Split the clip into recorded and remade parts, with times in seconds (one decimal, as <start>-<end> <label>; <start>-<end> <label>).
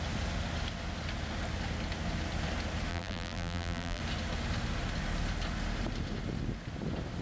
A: 0.0-2.9 recorded; 2.9-4.0 remade; 4.0-7.2 recorded